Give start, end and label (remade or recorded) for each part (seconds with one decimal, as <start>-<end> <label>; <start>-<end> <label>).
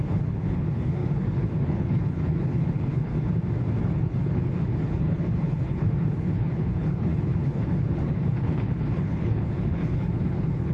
0.0-3.1 remade; 3.1-3.8 recorded; 3.8-10.7 remade